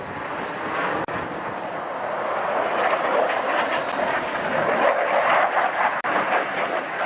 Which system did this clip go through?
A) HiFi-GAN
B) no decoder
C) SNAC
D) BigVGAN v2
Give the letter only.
B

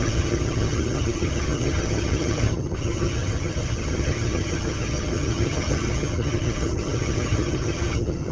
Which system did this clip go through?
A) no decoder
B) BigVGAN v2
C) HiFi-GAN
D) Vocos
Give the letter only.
C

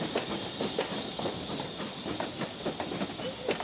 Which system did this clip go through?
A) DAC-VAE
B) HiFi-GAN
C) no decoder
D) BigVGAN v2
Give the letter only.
C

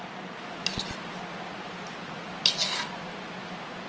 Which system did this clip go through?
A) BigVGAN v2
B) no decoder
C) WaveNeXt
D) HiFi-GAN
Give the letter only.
B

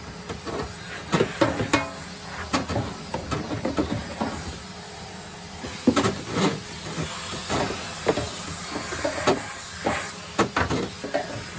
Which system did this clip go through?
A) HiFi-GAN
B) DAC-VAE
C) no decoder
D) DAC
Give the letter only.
C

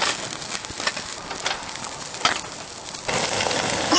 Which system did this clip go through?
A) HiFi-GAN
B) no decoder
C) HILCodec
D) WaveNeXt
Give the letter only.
B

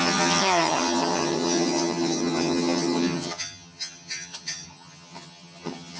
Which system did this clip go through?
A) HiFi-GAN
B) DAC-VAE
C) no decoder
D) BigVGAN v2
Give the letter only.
A